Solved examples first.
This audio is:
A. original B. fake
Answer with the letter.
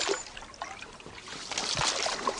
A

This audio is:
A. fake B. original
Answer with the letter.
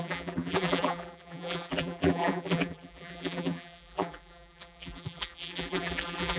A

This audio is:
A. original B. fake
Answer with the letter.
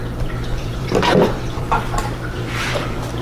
B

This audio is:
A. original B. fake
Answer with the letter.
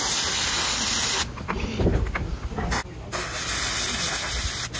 A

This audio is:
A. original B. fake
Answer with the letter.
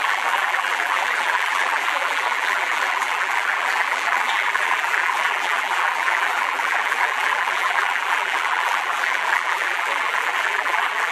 B